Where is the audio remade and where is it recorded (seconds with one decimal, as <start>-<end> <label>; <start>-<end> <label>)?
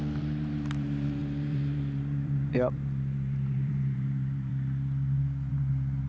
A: 0.0-4.5 remade; 4.5-5.5 recorded; 5.5-6.1 remade